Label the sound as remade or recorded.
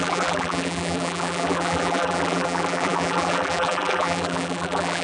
remade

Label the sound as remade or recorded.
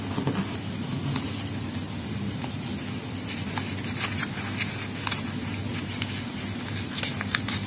recorded